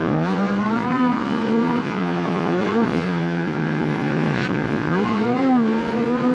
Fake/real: fake